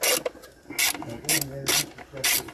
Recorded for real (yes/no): yes